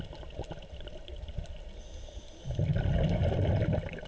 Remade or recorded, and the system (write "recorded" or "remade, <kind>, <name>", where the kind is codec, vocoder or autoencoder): recorded